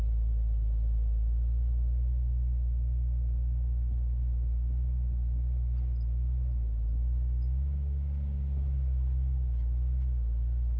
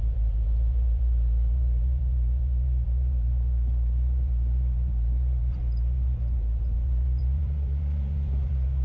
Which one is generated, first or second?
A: second